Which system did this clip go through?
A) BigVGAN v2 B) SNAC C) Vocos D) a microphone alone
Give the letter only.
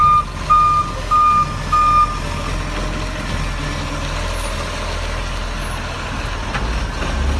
D